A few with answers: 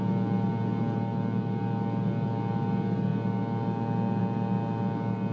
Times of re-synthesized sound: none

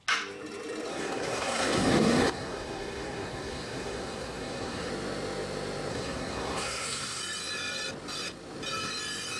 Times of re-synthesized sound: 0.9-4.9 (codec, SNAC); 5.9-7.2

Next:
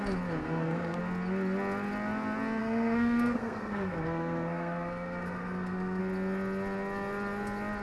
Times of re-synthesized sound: 0.4-1.0 (codec, SNAC); 2.6-6.0

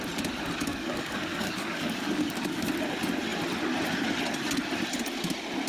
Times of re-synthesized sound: 0.7-2.7 (codec, DAC)